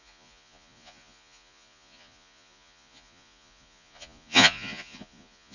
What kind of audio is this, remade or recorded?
remade